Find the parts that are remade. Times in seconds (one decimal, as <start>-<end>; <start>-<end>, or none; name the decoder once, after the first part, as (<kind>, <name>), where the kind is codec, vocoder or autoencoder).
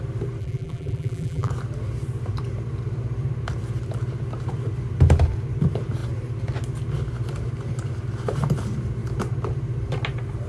0.4-1.5 (vocoder, BigVGAN v2)